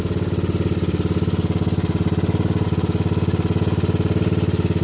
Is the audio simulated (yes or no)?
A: no